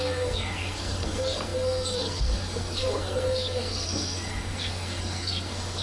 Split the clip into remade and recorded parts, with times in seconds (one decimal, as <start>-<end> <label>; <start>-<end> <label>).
0.0-5.8 remade